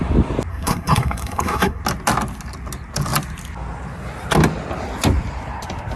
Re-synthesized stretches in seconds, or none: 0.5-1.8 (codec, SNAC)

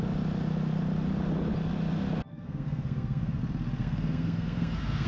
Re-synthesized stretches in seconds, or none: 2.3-3.4 (codec, SNAC); 3.8-5.1

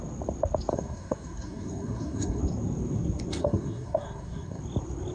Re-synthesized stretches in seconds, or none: 0.7-2.4 (codec, SNAC); 3.4-4.6